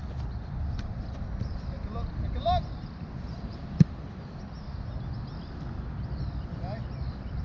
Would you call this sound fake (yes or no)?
no